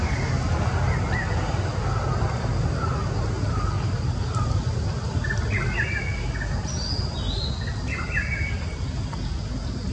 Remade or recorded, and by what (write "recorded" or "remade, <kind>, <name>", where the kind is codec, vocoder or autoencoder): recorded